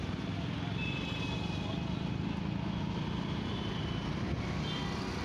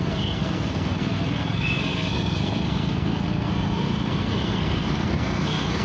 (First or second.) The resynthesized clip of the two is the second